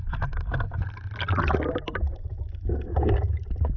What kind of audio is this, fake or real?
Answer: real